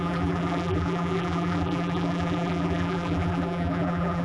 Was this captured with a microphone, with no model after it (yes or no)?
no